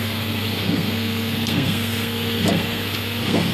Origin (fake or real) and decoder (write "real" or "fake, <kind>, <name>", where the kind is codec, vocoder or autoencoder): fake, codec, SNAC